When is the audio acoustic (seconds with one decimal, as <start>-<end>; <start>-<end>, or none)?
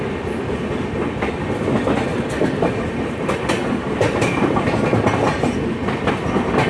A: 0.0-2.1; 4.8-6.7